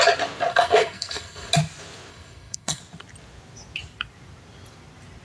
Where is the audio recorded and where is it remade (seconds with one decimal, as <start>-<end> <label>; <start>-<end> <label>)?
0.0-0.5 recorded; 0.5-1.5 remade; 1.5-2.1 recorded; 2.1-2.8 remade; 2.8-5.2 recorded